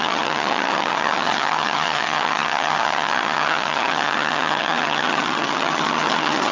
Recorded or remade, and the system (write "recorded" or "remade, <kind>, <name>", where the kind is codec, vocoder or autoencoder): remade, vocoder, HiFi-GAN